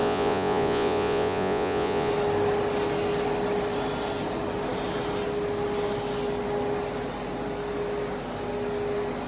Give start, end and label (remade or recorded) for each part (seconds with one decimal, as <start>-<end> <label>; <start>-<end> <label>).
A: 0.0-2.1 remade; 2.1-9.3 recorded